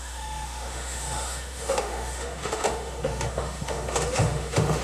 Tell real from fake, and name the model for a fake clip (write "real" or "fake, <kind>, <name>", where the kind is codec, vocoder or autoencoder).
fake, autoencoder, DAC-VAE